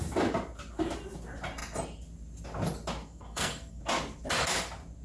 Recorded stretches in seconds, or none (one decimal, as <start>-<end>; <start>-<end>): 0.0-3.0; 3.8-5.0